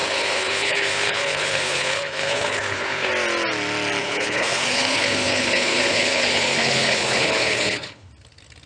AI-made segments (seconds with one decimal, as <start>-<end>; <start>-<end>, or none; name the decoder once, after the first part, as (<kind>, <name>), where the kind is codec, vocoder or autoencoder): 0.0-3.1 (codec, HILCodec); 4.0-8.1